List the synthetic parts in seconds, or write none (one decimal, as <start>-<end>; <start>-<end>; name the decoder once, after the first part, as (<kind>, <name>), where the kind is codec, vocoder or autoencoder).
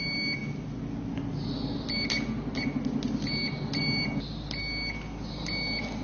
none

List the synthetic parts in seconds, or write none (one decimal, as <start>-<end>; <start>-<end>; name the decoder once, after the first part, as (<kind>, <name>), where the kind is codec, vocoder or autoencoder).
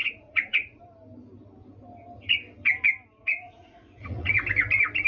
0.0-0.8 (vocoder, Vocos); 3.2-4.3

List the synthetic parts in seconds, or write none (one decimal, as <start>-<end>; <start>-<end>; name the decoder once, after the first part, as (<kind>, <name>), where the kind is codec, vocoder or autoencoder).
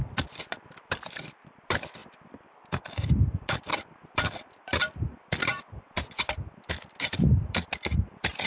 0.0-2.0 (vocoder, BigVGAN v2); 2.9-8.5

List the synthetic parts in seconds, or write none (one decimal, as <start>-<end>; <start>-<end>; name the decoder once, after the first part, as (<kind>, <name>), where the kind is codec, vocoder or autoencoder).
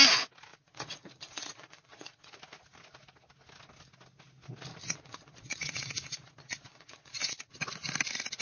0.5-2.4 (vocoder, Vocos); 4.8-7.6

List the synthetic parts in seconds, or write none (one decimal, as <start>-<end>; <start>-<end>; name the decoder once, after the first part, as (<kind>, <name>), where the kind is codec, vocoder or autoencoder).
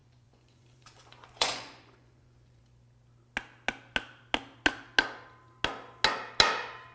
0.0-2.6 (vocoder, Vocos)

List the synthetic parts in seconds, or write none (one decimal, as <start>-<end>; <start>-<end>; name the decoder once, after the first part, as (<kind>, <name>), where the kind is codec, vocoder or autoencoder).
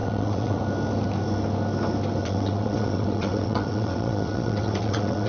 0.0-0.6 (vocoder, WaveNeXt); 2.2-5.3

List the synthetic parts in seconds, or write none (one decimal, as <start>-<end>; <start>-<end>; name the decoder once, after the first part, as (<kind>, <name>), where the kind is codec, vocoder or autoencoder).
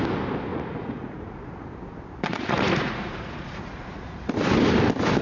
0.5-1.6 (vocoder, Vocos); 2.3-4.3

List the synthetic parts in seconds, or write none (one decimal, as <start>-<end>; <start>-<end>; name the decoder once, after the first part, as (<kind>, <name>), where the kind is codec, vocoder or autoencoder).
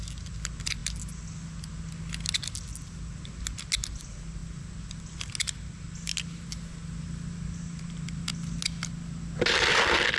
none